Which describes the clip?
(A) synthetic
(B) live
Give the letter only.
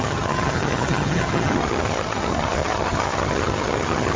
A